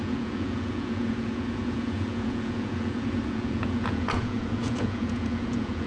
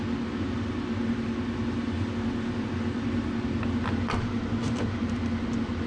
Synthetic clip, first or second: first